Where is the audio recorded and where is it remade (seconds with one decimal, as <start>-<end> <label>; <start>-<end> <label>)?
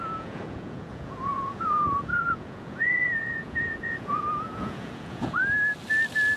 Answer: 0.0-5.4 remade; 5.4-6.4 recorded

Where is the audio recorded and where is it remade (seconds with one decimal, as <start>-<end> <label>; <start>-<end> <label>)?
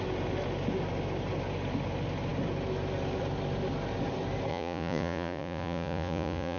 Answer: 0.0-4.5 recorded; 4.5-6.6 remade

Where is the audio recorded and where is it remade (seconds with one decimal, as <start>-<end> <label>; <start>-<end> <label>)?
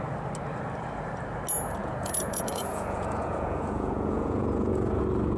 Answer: 0.0-1.8 recorded; 1.8-5.0 remade; 5.0-5.4 recorded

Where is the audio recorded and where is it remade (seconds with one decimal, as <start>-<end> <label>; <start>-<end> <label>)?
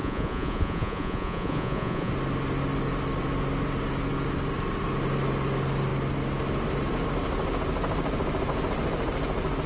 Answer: 0.0-2.1 remade; 2.1-9.7 recorded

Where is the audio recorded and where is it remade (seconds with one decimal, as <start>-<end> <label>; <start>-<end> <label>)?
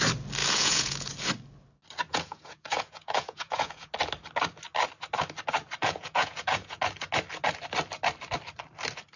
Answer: 0.0-0.4 recorded; 0.4-1.1 remade; 1.1-2.1 recorded; 2.1-3.9 remade; 3.9-5.8 recorded; 5.8-6.8 remade; 6.8-9.2 recorded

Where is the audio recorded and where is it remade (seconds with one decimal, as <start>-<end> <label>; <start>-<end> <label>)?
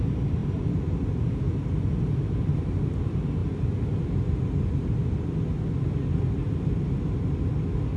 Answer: 0.0-8.0 recorded